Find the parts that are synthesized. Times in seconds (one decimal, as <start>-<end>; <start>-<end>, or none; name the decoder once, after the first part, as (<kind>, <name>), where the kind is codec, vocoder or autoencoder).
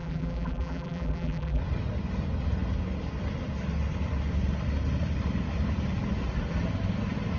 0.0-1.6 (vocoder, BigVGAN v2)